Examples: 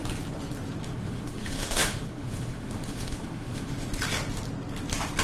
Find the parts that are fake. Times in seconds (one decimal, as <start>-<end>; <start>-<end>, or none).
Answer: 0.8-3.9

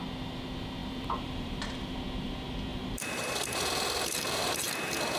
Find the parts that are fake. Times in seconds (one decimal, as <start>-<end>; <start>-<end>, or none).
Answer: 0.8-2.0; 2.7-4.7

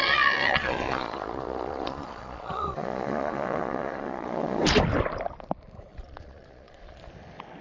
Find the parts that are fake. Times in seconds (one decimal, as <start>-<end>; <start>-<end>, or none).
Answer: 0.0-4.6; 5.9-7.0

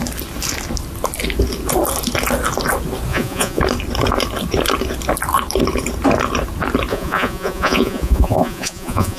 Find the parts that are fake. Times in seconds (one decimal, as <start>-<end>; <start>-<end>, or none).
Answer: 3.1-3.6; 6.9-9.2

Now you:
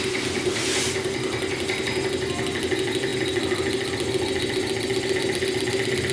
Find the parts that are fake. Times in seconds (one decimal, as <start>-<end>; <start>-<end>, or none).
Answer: none

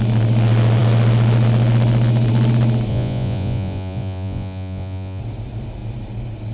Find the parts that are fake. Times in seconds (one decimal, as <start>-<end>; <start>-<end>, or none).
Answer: 2.9-5.2

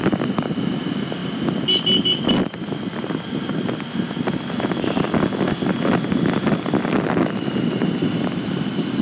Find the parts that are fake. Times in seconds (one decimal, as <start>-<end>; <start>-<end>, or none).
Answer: none

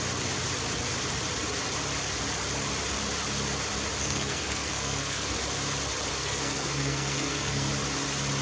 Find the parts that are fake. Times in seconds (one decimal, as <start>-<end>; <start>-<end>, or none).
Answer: 4.0-5.4; 6.2-7.7